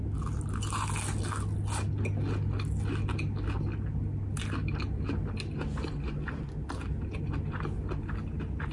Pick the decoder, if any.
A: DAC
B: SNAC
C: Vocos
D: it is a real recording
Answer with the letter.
D